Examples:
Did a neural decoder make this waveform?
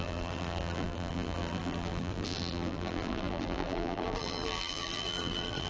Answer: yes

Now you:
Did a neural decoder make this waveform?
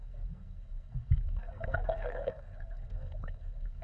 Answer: yes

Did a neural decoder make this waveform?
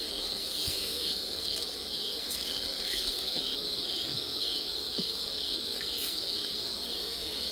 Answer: yes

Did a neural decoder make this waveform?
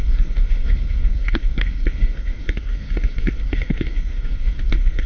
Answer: yes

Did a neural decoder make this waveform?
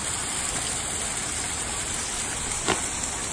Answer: no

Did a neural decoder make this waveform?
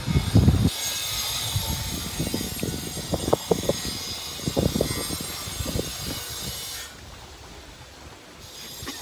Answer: no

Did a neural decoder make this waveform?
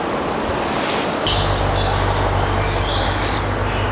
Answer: no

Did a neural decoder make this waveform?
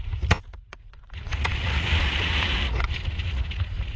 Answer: yes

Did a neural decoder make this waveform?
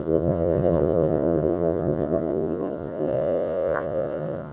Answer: yes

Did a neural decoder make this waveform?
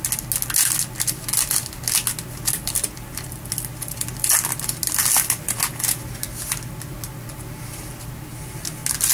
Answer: no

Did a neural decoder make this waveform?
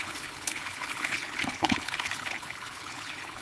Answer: yes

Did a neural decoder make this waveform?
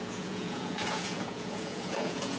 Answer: yes